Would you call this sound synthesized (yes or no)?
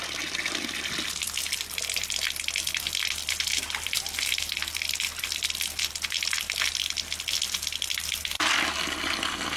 no